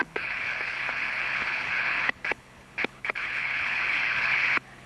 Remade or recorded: remade